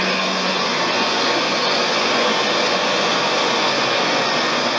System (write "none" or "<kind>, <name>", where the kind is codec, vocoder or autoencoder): vocoder, Vocos